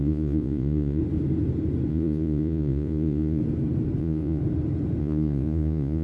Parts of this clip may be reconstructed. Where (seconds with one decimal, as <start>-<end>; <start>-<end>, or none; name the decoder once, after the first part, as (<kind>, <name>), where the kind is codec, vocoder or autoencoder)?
0.0-1.0 (vocoder, Vocos); 1.9-3.4; 4.0-4.4; 5.0-6.0